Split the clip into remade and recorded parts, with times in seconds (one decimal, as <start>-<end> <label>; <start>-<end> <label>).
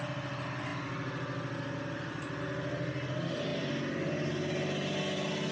0.0-5.5 recorded